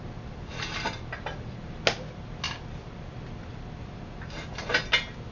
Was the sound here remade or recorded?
recorded